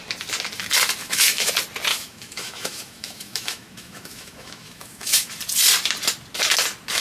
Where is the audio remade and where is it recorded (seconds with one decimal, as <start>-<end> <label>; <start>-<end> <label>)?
0.0-1.0 recorded; 1.0-1.5 remade; 1.5-1.9 recorded; 1.9-5.3 remade; 5.3-7.0 recorded